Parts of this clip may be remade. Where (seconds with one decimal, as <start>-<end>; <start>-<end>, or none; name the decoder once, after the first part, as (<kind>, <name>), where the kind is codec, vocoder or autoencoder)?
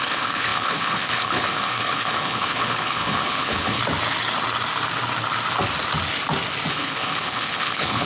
0.0-3.8 (codec, HILCodec); 6.7-8.1